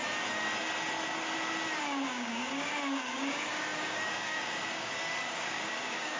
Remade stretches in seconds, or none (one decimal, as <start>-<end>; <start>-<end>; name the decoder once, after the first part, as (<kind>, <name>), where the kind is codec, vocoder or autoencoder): 1.8-6.2 (codec, DAC)